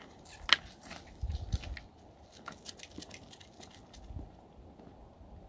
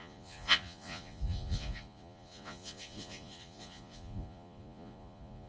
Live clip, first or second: first